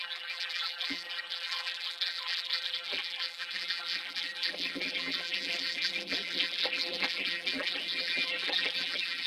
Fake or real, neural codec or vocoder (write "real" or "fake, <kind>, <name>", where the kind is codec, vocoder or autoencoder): fake, vocoder, BigVGAN v2